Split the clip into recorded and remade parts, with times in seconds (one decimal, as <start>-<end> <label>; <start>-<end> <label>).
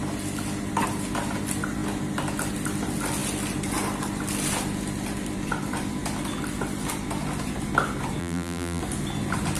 0.0-8.2 recorded; 8.2-8.8 remade; 8.8-9.6 recorded